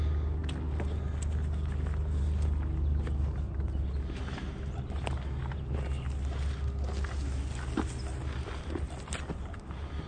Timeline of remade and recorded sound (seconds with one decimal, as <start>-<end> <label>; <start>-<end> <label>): 0.0-10.1 recorded